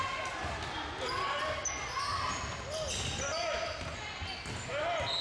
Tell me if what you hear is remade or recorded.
recorded